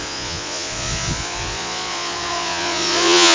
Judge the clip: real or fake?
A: fake